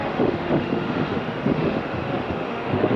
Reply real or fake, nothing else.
fake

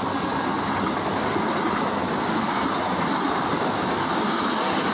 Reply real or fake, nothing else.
real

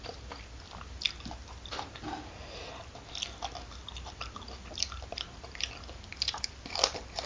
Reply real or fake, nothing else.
fake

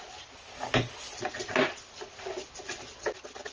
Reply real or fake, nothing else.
real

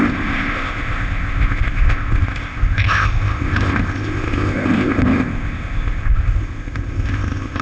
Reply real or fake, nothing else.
fake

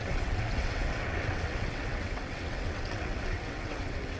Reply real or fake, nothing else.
fake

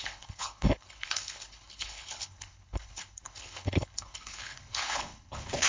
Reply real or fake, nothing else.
fake